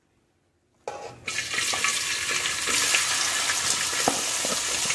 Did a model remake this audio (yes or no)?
no